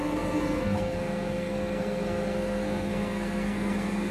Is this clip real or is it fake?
fake